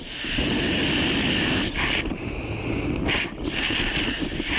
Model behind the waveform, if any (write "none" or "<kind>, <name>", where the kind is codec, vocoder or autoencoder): none